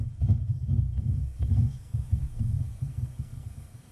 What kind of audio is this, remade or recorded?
remade